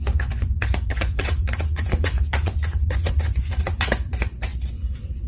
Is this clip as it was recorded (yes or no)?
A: no